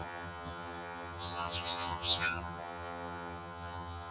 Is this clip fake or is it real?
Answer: fake